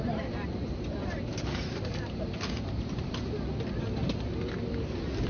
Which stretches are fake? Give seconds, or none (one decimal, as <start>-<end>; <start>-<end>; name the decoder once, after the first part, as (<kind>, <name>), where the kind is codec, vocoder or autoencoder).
1.3-3.1 (vocoder, BigVGAN v2)